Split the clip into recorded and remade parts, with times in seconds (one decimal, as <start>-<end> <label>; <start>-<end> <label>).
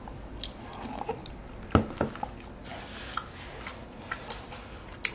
0.0-5.1 recorded